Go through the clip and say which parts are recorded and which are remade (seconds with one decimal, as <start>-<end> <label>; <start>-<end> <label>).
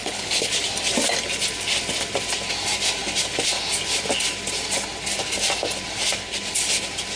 0.0-0.5 remade; 0.5-7.2 recorded